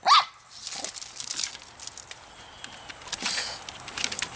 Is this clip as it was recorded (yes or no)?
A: yes